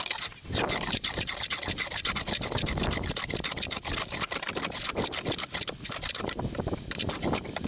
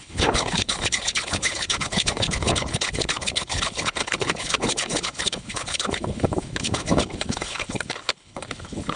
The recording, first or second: first